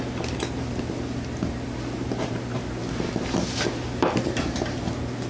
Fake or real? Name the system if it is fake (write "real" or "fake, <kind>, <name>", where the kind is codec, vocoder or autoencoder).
real